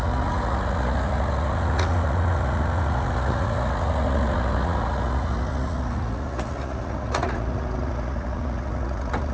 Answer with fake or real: fake